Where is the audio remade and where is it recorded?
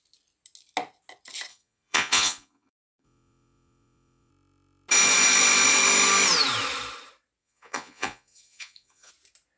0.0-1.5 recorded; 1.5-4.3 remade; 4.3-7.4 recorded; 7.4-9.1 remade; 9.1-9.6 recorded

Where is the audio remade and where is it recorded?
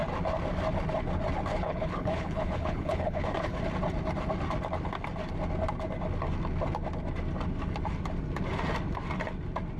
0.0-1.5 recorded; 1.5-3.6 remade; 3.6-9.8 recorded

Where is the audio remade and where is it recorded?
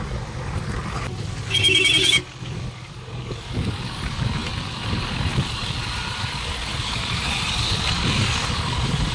0.0-9.1 remade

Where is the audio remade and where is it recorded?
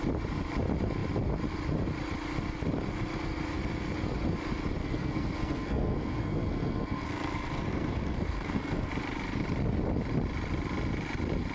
0.0-4.8 recorded; 4.8-8.9 remade; 8.9-11.5 recorded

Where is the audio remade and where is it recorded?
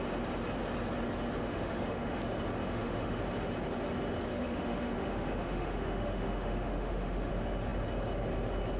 0.0-1.4 recorded; 1.4-2.2 remade; 2.2-2.6 recorded; 2.6-3.2 remade; 3.2-4.3 recorded; 4.3-7.3 remade; 7.3-8.8 recorded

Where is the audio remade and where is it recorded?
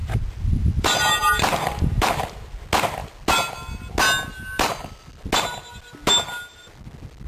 0.0-7.3 recorded